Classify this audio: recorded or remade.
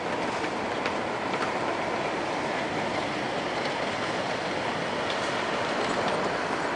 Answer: recorded